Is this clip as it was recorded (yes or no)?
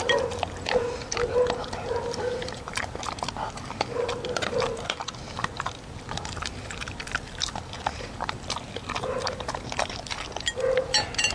no